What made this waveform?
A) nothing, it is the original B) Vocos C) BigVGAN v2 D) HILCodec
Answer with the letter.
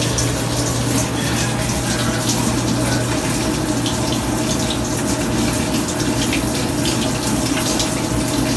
A